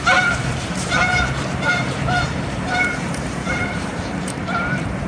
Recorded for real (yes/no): no